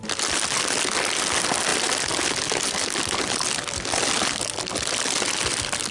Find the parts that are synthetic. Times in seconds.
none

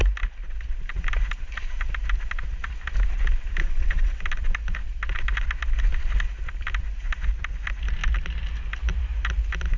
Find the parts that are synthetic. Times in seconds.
3.6-4.2 (vocoder, WaveNeXt)

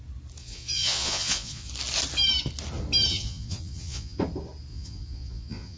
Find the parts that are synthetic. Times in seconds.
0.4-1.7 (vocoder, Vocos); 3.1-4.2; 4.7-5.8

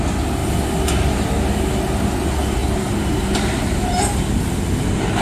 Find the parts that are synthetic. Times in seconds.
2.6-4.2 (vocoder, BigVGAN v2)

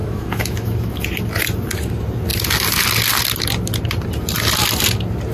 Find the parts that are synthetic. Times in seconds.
0.0-1.0 (autoencoder, DAC-VAE)